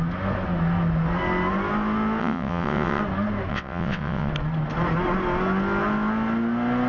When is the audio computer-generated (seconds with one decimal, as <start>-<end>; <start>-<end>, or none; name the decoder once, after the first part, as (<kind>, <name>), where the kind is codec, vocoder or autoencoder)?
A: 2.2-3.0 (vocoder, WaveNeXt); 3.5-4.3